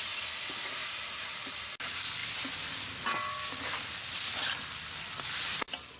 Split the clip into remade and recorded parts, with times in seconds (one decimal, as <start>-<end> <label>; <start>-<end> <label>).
0.0-6.0 recorded